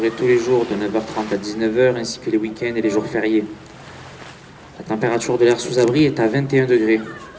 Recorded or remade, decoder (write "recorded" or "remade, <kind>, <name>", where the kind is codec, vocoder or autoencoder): recorded